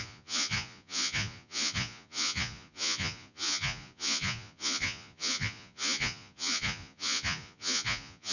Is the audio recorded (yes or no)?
no